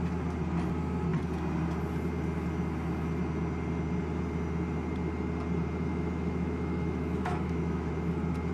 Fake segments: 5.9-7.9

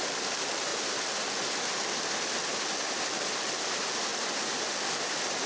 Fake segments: none

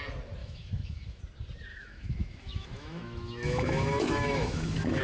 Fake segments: 0.4-1.2; 1.7-5.0

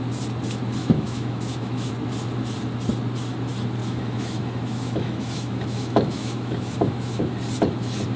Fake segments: 0.8-1.9; 3.8-7.2